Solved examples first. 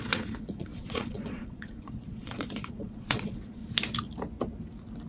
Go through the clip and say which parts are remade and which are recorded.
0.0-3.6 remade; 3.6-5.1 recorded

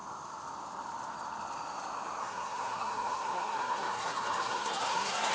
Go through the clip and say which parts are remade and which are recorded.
0.0-2.2 recorded; 2.2-5.3 remade

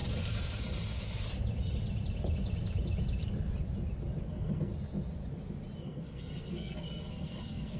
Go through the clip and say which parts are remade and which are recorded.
0.0-4.2 recorded; 4.2-4.7 remade; 4.7-5.8 recorded; 5.8-7.8 remade

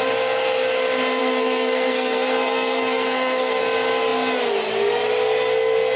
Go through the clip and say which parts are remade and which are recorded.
0.0-1.2 recorded; 1.2-3.6 remade; 3.6-6.0 recorded

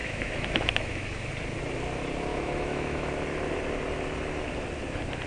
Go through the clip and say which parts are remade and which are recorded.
0.0-1.3 remade; 1.3-2.3 recorded; 2.3-3.1 remade; 3.1-5.3 recorded

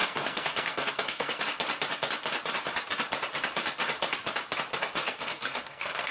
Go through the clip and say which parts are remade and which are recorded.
0.0-1.4 remade; 1.4-5.0 recorded; 5.0-6.1 remade

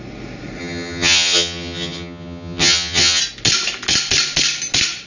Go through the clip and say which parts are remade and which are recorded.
0.0-0.6 recorded; 0.6-3.2 remade; 3.2-5.1 recorded